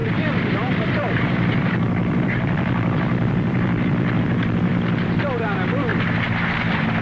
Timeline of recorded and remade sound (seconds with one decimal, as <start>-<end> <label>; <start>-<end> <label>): 0.0-4.2 remade; 4.2-7.0 recorded